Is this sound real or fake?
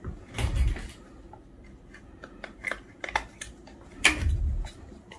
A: real